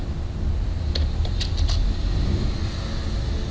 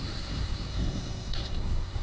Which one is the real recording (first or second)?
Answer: first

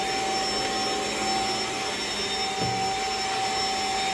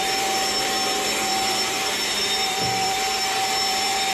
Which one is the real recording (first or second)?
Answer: first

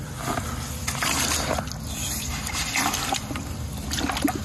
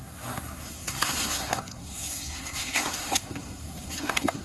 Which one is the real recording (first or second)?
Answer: first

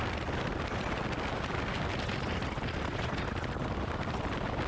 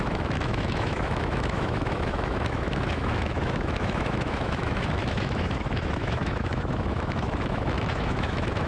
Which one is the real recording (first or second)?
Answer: first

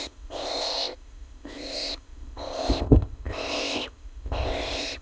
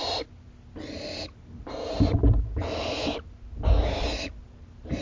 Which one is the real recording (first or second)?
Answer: second